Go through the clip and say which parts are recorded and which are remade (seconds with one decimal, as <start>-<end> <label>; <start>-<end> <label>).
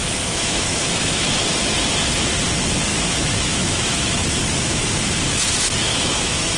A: 0.0-1.3 remade; 1.3-2.9 recorded; 2.9-5.2 remade; 5.2-5.9 recorded; 5.9-6.6 remade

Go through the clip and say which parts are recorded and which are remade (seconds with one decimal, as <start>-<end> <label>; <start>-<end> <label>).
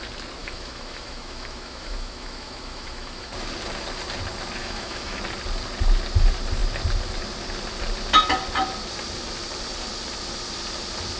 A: 0.0-0.4 recorded; 0.4-3.3 remade; 3.3-4.6 recorded; 4.6-5.2 remade; 5.2-11.2 recorded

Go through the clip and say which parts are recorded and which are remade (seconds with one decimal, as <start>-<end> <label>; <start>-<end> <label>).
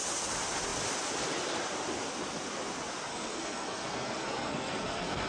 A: 0.0-3.1 recorded; 3.1-5.3 remade